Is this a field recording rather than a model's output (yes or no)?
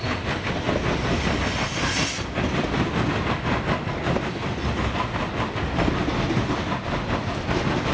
yes